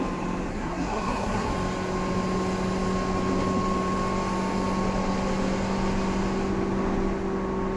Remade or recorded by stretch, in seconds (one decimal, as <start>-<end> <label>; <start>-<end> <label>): 0.0-0.5 recorded; 0.5-1.5 remade; 1.5-7.8 recorded